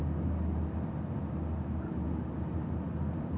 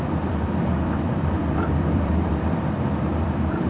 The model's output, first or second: second